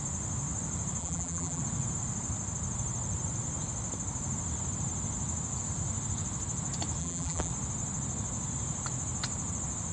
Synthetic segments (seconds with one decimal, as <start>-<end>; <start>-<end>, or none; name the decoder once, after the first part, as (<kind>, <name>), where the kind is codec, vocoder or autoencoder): 1.0-1.6 (vocoder, BigVGAN v2); 7.0-7.5